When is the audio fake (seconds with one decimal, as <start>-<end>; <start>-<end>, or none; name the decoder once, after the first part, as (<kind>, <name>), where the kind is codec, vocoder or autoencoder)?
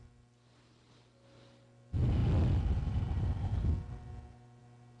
none